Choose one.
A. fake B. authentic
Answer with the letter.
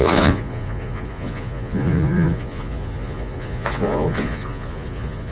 A